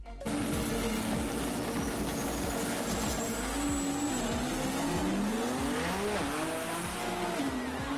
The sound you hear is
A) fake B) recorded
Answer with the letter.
B